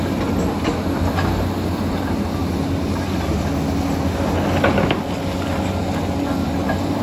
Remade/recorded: recorded